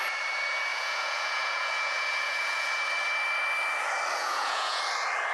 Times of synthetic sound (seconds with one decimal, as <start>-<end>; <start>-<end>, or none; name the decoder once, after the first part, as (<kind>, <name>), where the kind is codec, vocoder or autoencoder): 0.7-2.8 (vocoder, Vocos); 4.2-4.8